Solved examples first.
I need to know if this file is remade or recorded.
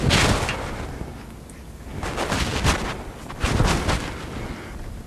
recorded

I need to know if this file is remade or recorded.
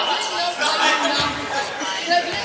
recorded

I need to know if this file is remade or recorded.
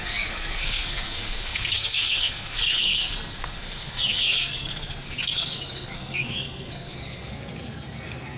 remade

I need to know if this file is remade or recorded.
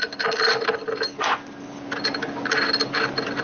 recorded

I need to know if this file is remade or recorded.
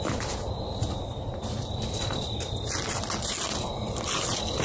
recorded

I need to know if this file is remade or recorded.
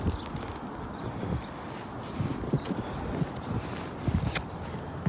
recorded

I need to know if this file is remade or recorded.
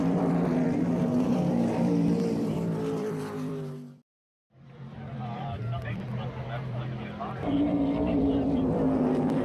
remade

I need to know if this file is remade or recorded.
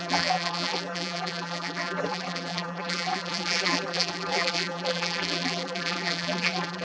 remade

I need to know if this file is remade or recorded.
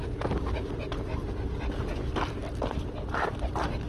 recorded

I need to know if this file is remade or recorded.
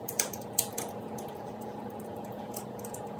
remade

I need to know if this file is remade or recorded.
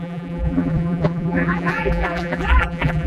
remade